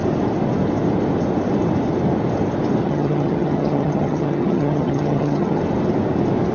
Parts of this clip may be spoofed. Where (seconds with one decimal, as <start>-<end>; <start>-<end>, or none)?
2.8-5.6